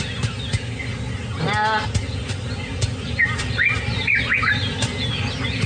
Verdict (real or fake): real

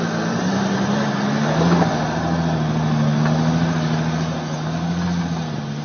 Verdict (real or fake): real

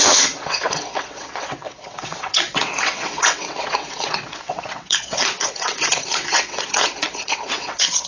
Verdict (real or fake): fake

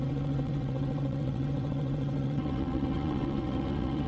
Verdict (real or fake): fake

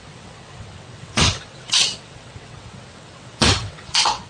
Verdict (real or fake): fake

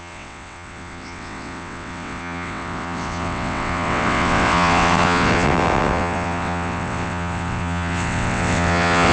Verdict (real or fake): fake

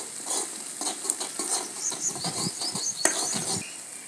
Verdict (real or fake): real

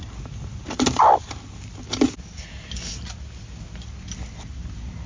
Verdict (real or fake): real